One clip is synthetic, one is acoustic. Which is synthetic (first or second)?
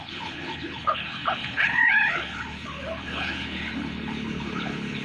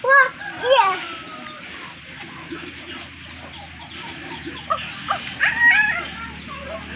first